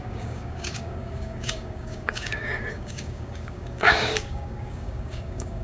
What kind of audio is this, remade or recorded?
remade